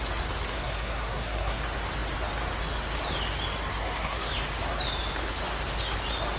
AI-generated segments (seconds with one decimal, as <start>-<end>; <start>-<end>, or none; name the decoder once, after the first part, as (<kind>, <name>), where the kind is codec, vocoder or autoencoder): 0.5-1.6 (codec, SNAC); 3.7-4.3